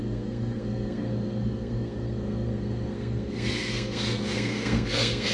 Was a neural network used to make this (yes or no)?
yes